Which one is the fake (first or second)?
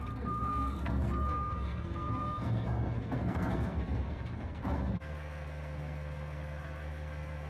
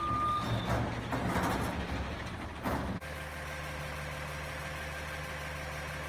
first